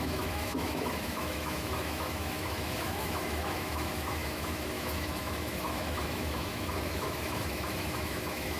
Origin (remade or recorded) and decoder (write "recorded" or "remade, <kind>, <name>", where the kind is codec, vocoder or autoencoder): remade, autoencoder, DAC-VAE